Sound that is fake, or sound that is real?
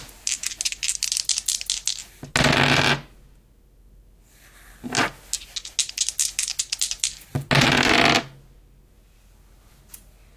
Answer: real